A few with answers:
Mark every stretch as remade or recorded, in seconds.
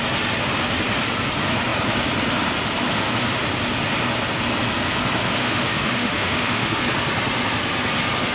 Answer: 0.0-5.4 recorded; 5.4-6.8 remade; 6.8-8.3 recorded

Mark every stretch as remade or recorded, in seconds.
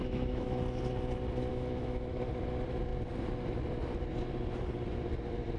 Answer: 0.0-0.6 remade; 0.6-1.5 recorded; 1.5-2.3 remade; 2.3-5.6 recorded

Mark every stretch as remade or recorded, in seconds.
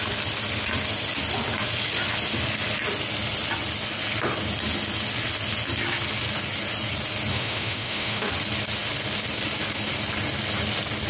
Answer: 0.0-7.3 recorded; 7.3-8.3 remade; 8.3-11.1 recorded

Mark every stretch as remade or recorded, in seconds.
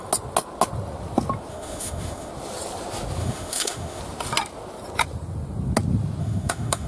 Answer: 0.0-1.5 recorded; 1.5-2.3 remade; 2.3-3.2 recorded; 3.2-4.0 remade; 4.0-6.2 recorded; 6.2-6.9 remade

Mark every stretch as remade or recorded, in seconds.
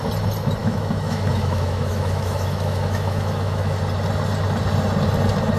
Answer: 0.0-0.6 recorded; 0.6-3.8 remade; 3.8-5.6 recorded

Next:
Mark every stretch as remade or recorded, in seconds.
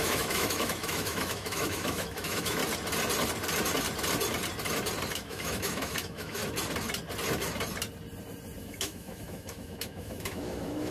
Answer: 0.0-2.6 remade; 2.6-5.1 recorded; 5.1-6.4 remade; 6.4-8.6 recorded; 8.6-10.9 remade